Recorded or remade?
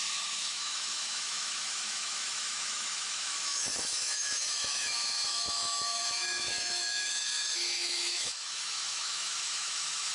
remade